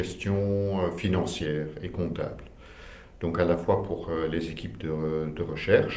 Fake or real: real